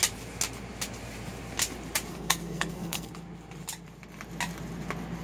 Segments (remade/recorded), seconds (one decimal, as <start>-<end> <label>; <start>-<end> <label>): 0.0-2.1 recorded; 2.1-3.1 remade; 3.1-5.2 recorded